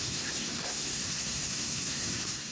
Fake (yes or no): yes